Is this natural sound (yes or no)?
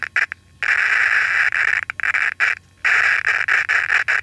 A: yes